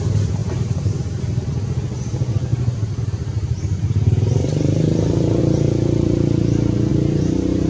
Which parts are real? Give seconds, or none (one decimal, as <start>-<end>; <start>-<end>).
0.0-0.4; 1.2-2.5; 5.4-6.9